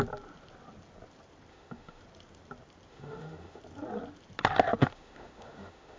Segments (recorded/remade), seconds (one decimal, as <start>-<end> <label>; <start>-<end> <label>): 0.0-1.5 recorded; 1.5-2.0 remade; 2.0-2.9 recorded; 2.9-3.6 remade; 3.6-4.8 recorded; 4.8-6.0 remade